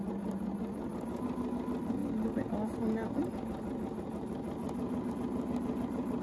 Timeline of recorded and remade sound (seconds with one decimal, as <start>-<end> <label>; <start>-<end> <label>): 0.0-6.2 recorded